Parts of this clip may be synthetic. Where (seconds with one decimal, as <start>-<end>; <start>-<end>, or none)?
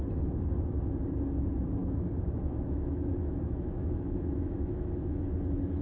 1.8-5.3